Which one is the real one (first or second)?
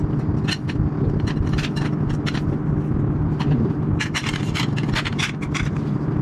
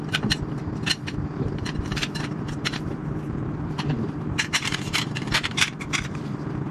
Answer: first